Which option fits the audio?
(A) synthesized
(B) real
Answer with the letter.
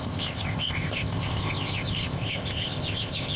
A